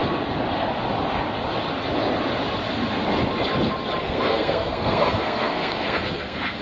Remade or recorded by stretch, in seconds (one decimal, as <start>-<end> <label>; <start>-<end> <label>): 0.0-4.0 recorded; 4.0-6.6 remade